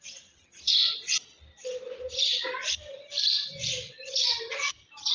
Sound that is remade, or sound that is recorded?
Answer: remade